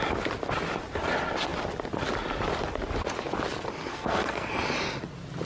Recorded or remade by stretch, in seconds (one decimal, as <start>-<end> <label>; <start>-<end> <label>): 0.0-3.9 recorded; 3.9-4.5 remade; 4.5-5.4 recorded